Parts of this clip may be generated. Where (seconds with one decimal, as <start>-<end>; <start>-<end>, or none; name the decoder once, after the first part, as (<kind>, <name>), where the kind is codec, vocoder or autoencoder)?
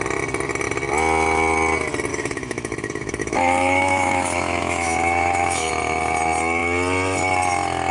2.1-5.7 (autoencoder, DAC-VAE)